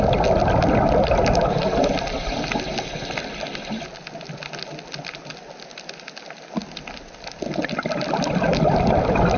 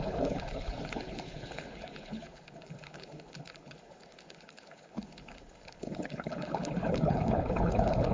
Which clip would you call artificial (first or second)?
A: second